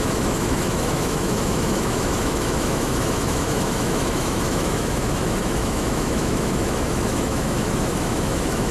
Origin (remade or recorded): remade